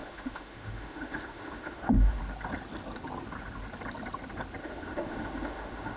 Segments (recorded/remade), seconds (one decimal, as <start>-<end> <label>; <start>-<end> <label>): 0.0-2.2 remade; 2.2-4.6 recorded; 4.6-6.0 remade